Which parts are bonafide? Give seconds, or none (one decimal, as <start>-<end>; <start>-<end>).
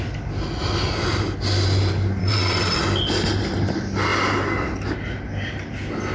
0.0-2.2; 2.8-6.1